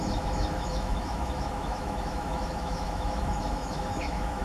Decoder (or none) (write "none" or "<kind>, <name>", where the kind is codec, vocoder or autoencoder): autoencoder, DAC-VAE